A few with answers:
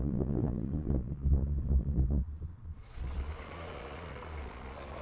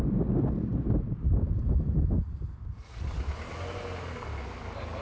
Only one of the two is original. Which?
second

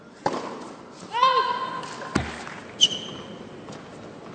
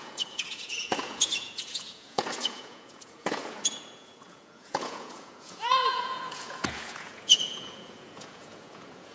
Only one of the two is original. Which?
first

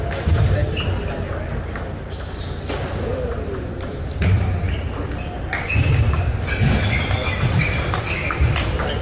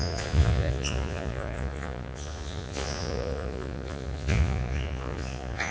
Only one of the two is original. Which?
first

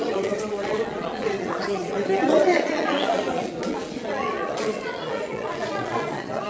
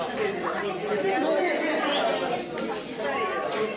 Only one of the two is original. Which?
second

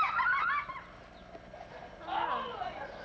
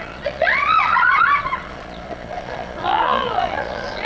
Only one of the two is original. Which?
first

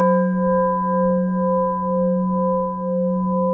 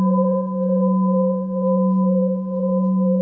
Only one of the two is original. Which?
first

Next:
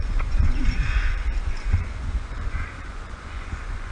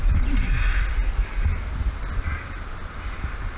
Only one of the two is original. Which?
second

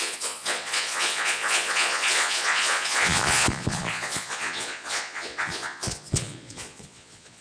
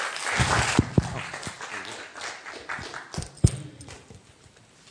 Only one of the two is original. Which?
second